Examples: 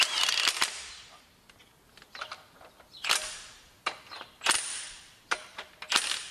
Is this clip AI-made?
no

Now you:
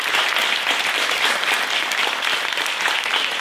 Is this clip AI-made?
yes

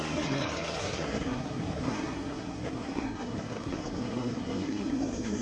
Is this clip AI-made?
yes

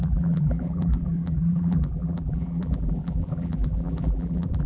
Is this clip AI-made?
yes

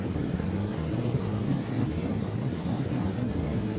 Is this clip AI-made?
yes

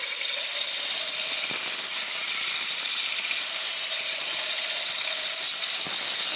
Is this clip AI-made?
no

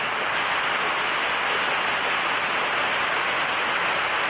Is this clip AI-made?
no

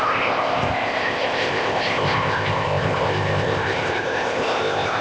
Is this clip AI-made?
yes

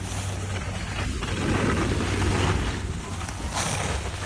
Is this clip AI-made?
no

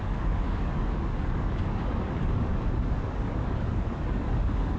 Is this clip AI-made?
yes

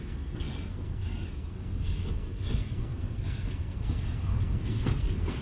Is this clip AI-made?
yes